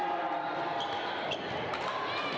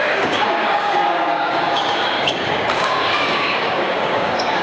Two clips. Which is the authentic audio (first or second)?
first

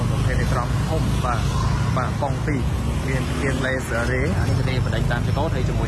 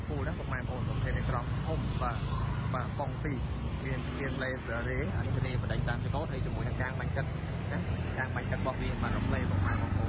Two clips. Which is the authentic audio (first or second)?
first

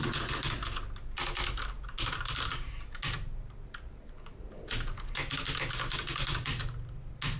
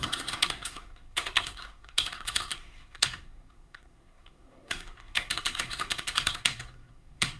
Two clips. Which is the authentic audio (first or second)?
first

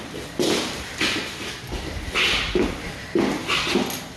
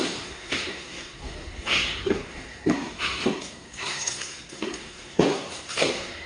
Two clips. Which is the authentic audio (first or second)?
first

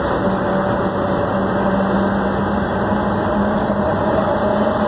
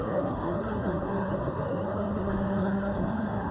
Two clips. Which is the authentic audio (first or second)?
first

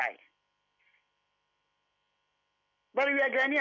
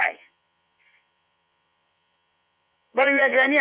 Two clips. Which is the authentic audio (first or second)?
first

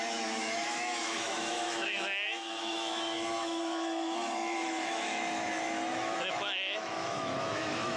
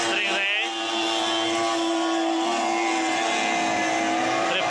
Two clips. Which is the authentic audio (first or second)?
second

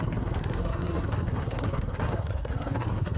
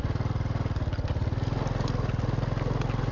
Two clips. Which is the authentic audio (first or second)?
second